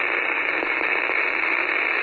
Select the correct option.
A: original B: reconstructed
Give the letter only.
A